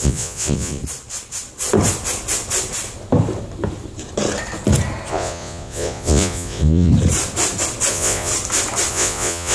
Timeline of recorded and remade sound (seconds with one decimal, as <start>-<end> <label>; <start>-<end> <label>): 0.0-0.8 remade; 0.8-5.1 recorded; 5.1-6.9 remade; 6.9-7.9 recorded; 7.9-8.3 remade; 8.3-8.9 recorded; 8.9-9.5 remade